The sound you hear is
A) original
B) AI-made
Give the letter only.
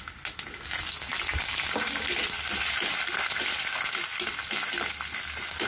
A